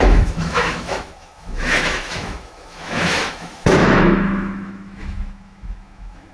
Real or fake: fake